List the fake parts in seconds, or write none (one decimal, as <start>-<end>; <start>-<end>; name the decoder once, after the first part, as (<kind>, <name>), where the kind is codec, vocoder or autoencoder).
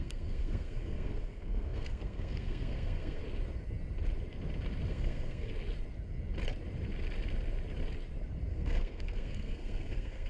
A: 0.0-3.2 (codec, SNAC); 4.9-5.5; 8.5-10.3